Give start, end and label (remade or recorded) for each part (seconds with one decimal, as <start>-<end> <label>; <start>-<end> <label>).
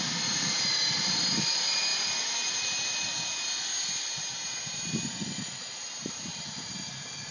0.0-1.9 remade; 1.9-6.0 recorded; 6.0-7.3 remade